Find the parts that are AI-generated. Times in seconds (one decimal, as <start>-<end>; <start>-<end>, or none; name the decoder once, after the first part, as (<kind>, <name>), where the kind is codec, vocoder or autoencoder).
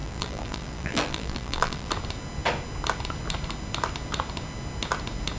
0.0-1.9 (vocoder, BigVGAN v2)